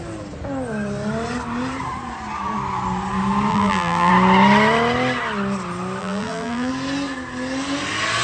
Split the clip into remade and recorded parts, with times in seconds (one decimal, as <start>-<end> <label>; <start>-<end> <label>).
0.0-3.5 recorded; 3.5-4.1 remade; 4.1-6.0 recorded; 6.0-6.7 remade; 6.7-8.2 recorded